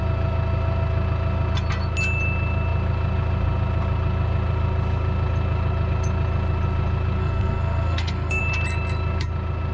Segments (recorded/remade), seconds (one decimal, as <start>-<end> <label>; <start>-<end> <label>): 0.0-7.2 recorded; 7.2-8.4 remade; 8.4-9.7 recorded